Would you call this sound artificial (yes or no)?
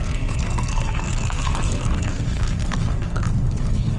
yes